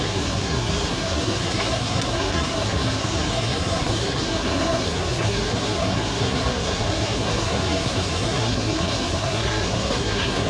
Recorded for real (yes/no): no